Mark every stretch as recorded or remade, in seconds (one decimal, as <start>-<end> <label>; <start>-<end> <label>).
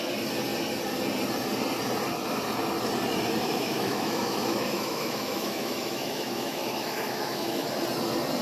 0.0-3.4 recorded; 3.4-7.7 remade; 7.7-8.4 recorded